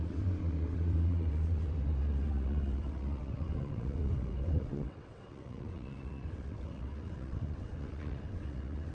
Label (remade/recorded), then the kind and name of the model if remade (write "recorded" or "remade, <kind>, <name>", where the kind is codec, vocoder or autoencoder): remade, vocoder, WaveNeXt